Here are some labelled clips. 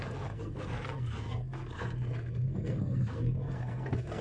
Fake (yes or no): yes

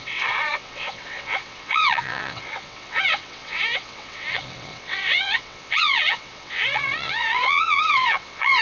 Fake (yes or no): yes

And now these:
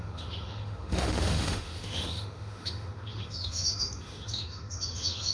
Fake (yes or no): yes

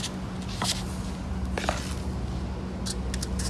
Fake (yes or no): no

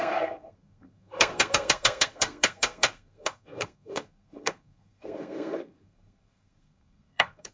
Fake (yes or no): yes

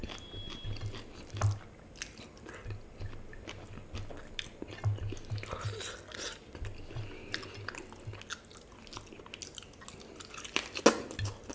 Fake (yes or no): no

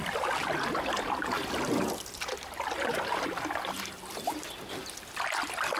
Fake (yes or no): no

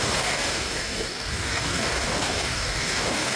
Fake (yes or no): yes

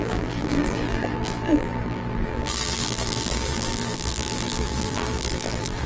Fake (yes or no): yes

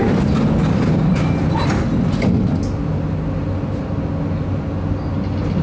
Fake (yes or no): no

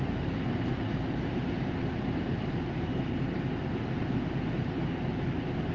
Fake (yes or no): no